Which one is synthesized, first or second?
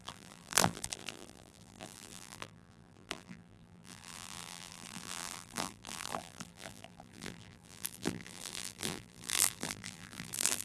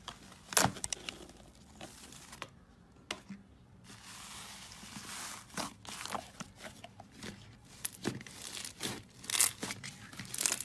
first